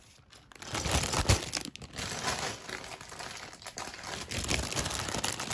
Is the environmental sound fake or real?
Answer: real